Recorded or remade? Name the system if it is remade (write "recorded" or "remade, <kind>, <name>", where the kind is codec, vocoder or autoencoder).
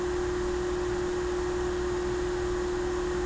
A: recorded